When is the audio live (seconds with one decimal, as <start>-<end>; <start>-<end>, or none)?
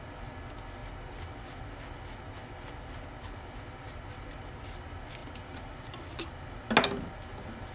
0.0-7.7